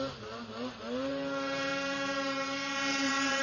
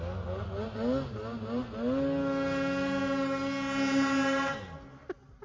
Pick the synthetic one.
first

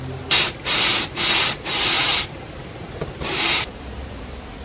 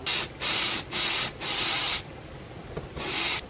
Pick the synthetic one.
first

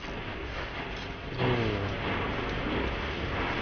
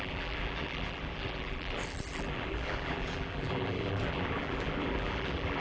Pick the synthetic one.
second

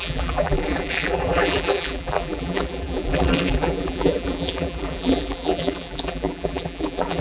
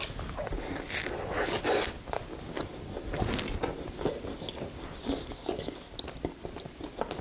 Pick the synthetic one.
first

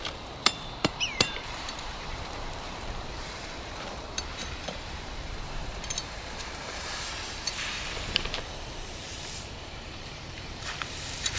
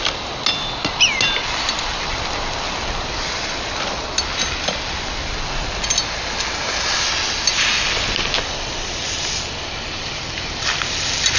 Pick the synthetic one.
first